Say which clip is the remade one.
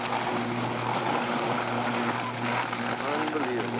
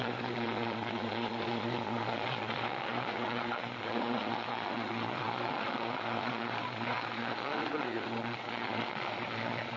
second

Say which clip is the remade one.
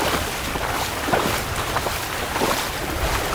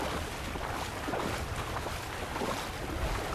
first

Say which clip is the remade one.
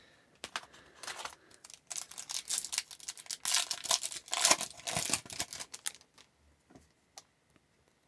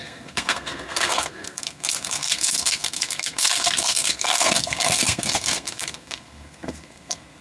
second